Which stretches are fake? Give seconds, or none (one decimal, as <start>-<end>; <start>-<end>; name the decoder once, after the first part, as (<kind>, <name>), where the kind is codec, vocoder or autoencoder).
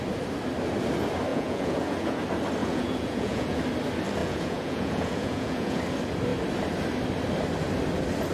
1.3-2.2 (vocoder, Vocos); 2.6-3.6; 4.2-5.8